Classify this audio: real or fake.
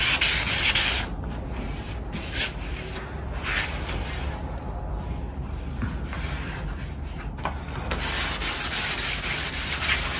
real